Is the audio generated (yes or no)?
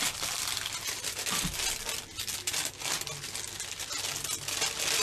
no